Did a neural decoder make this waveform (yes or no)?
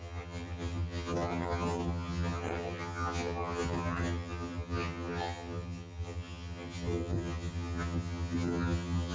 yes